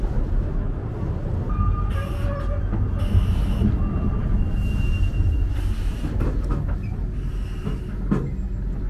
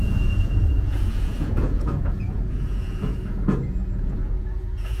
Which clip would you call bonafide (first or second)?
first